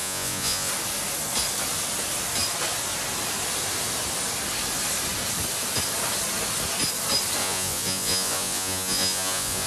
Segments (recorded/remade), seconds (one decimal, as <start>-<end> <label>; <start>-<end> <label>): 0.0-0.7 remade; 0.7-7.4 recorded; 7.4-9.7 remade